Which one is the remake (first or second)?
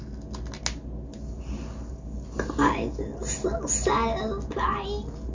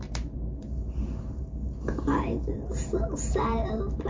second